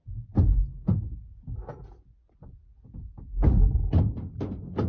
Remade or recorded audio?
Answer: recorded